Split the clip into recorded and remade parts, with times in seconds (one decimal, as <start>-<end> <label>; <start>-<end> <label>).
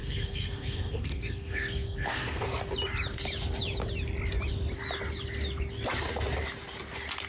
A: 0.0-2.5 remade; 2.5-7.3 recorded